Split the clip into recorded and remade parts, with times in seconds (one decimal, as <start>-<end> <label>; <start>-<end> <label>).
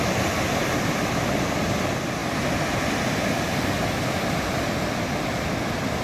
0.0-6.0 recorded